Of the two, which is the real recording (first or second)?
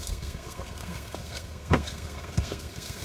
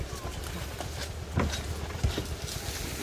second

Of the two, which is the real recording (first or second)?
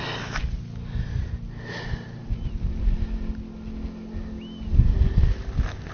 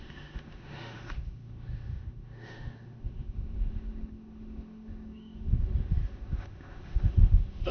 first